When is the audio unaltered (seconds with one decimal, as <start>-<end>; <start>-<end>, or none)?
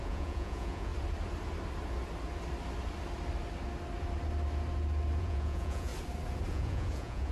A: 0.9-5.2; 5.9-6.5